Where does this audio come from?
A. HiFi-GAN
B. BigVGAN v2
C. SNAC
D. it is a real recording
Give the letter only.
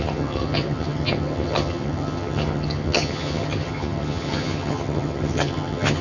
A